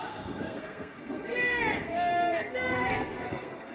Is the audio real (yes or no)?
no